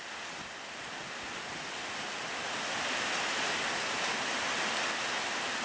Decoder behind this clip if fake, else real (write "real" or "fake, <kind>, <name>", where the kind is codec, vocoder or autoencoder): real